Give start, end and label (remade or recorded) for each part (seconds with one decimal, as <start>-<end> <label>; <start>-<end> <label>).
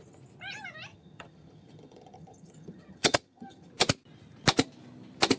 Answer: 0.0-0.9 recorded; 0.9-3.7 remade; 3.7-5.4 recorded